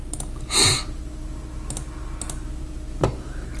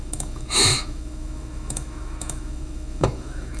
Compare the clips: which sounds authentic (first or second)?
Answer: first